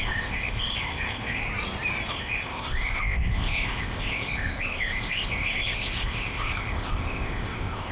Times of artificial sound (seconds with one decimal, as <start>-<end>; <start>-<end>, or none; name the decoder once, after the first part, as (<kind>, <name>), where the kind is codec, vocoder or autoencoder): 0.0-1.4 (codec, ZipCodec); 2.1-7.9